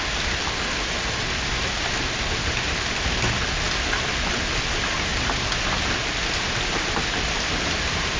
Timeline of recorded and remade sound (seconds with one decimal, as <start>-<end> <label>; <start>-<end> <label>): 0.0-8.2 recorded